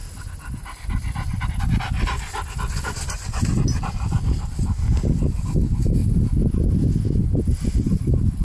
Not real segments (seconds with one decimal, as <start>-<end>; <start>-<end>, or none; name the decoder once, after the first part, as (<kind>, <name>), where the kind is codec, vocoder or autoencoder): none